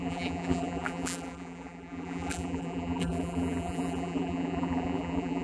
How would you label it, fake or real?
fake